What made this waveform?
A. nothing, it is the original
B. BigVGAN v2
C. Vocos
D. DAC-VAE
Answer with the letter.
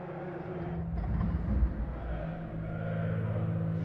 A